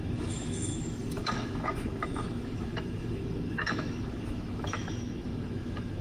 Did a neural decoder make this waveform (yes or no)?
yes